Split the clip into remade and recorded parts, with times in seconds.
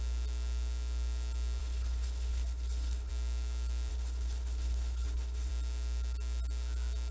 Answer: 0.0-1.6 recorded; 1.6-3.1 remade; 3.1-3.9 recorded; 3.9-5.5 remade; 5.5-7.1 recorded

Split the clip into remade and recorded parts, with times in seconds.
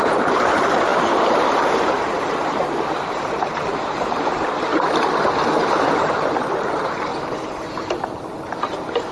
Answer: 0.0-4.7 remade; 4.7-6.0 recorded; 6.0-9.1 remade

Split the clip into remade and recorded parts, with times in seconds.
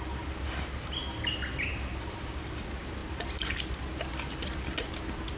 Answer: 0.0-5.4 recorded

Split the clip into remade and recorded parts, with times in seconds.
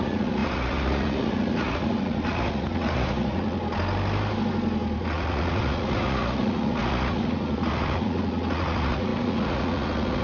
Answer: 0.0-3.6 remade; 3.6-5.0 recorded; 5.0-10.2 remade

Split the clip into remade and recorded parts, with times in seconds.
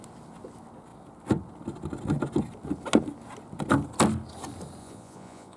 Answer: 0.0-4.8 recorded; 4.8-5.6 remade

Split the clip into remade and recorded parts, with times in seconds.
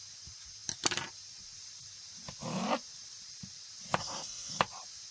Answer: 0.0-4.0 recorded; 4.0-4.6 remade; 4.6-5.1 recorded